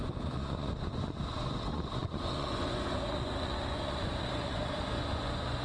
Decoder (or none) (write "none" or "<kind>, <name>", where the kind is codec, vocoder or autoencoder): vocoder, Vocos